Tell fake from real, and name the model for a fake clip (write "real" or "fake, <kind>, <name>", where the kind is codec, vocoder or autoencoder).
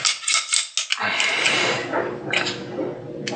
real